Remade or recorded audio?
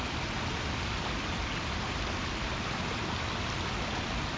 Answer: recorded